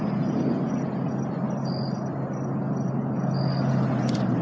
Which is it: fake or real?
real